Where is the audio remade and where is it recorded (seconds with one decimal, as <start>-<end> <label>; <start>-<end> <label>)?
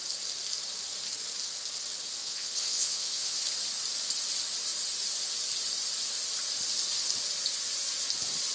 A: 0.0-2.2 recorded; 2.2-3.4 remade; 3.4-8.5 recorded